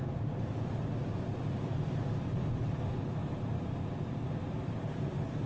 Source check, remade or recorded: recorded